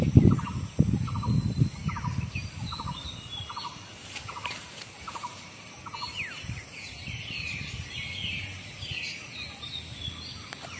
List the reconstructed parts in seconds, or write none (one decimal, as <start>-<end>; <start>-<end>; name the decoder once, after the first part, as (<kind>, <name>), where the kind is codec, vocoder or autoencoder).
none